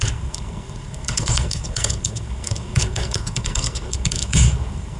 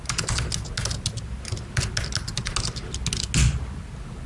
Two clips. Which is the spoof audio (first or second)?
first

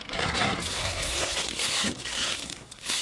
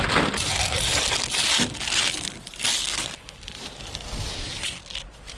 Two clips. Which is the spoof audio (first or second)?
first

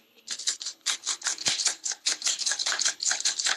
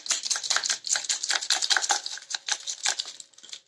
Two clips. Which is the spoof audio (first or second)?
first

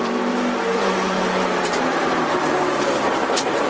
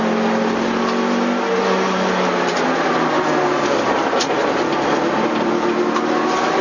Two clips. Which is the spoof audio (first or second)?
first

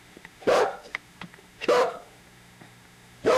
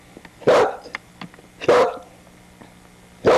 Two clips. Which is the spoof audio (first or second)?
first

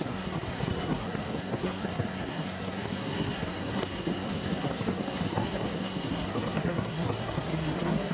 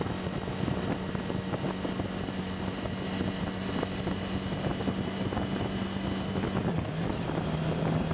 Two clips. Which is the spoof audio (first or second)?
first